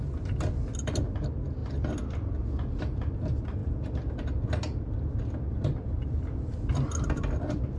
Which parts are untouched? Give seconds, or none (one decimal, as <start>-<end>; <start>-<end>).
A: 0.0-7.8